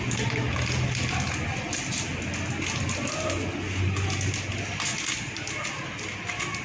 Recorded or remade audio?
recorded